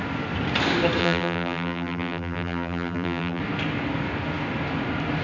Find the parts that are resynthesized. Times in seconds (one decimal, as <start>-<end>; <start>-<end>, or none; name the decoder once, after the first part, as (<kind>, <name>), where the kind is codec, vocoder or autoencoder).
1.0-3.4 (vocoder, BigVGAN v2)